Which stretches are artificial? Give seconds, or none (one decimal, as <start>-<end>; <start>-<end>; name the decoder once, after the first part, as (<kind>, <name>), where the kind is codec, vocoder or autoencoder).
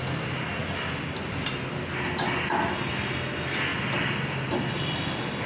none